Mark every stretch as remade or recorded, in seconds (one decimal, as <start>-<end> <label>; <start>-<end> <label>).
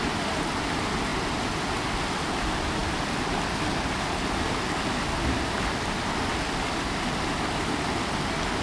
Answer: 0.0-8.6 recorded